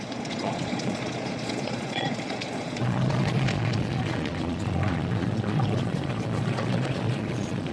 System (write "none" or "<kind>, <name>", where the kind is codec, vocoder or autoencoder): vocoder, Vocos